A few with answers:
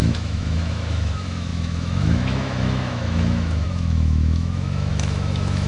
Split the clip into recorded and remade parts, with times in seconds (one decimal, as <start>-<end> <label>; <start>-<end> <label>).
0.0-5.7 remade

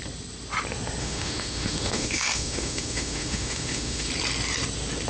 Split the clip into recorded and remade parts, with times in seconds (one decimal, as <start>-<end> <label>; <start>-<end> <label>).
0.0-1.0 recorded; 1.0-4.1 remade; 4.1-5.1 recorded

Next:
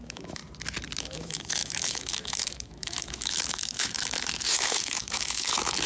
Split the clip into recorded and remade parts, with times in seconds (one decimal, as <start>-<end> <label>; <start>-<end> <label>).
0.0-0.4 remade; 0.4-1.0 recorded; 1.0-5.9 remade

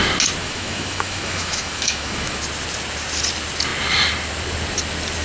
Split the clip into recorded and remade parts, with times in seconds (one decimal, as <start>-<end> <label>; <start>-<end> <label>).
0.0-0.4 recorded; 0.4-2.4 remade; 2.4-5.2 recorded

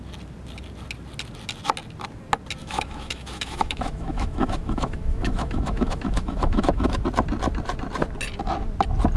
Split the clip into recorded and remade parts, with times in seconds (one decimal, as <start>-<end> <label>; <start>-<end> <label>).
0.0-2.6 recorded; 2.6-7.0 remade; 7.0-9.2 recorded